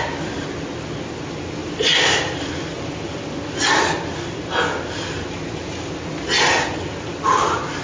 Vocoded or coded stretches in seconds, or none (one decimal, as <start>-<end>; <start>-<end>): 1.6-3.7